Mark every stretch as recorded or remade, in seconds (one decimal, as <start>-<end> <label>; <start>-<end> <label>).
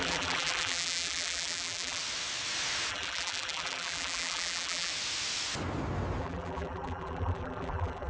0.0-2.0 remade; 2.0-2.9 recorded; 2.9-4.9 remade; 4.9-6.2 recorded; 6.2-8.1 remade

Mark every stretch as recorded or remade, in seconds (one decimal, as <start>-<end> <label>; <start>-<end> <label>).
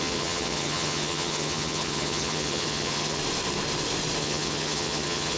0.0-3.2 remade; 3.2-4.2 recorded; 4.2-5.4 remade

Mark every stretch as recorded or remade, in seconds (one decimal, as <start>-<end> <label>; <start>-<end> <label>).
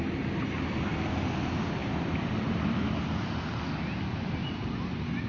0.0-5.3 recorded